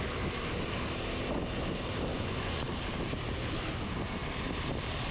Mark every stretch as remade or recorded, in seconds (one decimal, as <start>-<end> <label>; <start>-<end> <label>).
0.0-2.1 recorded; 2.1-2.7 remade; 2.7-5.1 recorded